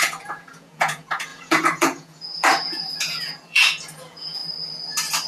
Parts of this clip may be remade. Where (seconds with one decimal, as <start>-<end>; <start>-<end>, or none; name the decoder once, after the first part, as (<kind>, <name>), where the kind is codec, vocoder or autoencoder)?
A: 0.0-4.4 (vocoder, Vocos)